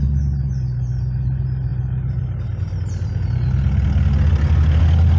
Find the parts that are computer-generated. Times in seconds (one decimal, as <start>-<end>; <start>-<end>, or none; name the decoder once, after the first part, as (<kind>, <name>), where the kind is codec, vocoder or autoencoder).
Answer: none